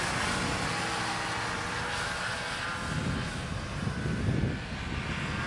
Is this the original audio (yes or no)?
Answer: yes